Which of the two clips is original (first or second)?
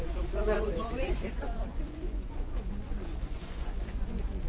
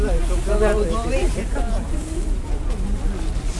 second